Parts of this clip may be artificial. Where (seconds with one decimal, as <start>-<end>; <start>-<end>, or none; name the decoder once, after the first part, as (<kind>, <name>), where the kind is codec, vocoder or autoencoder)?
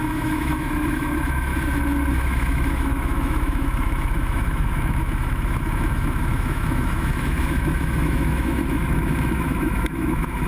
0.0-1.5 (autoencoder, DAC-VAE); 2.1-10.5